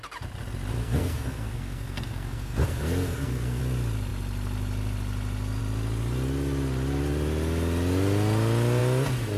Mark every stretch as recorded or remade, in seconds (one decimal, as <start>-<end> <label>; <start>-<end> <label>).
0.0-0.8 recorded; 0.8-3.6 remade; 3.6-9.4 recorded